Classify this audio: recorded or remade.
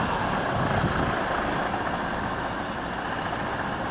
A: recorded